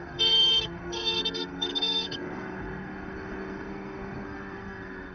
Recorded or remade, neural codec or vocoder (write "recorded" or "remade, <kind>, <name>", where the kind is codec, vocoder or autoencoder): remade, codec, SNAC